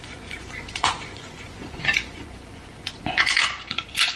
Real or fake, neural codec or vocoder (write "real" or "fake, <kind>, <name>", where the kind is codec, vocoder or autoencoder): fake, vocoder, Vocos